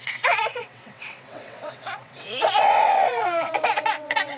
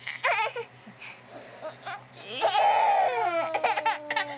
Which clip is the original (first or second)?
second